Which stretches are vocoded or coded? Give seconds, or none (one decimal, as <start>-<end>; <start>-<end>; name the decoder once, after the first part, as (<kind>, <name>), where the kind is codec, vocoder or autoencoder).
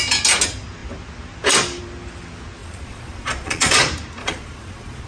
2.6-3.7 (vocoder, Vocos); 4.2-5.1